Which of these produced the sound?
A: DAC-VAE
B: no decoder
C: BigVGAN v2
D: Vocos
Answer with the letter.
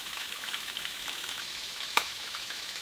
A